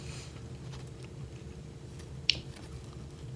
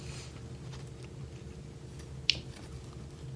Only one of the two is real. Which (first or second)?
second